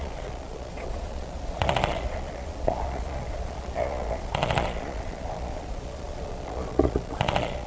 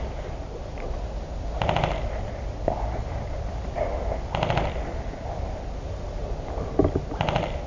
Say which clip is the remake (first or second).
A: first